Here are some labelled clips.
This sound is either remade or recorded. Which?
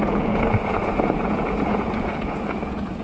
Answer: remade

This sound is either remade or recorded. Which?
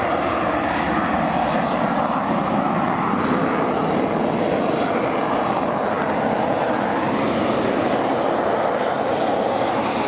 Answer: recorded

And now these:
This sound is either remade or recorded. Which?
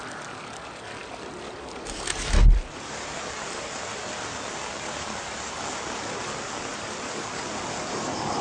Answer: recorded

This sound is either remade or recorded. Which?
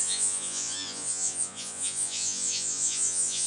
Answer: remade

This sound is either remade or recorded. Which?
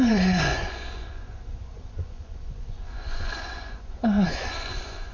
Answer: remade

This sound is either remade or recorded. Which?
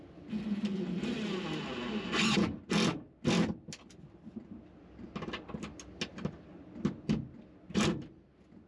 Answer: recorded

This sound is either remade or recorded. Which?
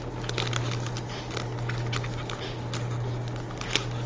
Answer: recorded